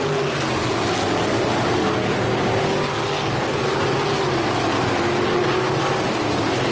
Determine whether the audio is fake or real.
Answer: real